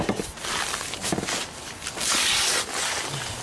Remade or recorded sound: recorded